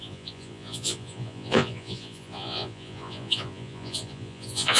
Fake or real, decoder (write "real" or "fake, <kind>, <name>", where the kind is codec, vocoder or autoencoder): fake, vocoder, Vocos